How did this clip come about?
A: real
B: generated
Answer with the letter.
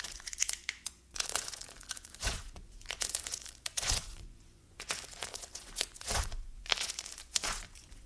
B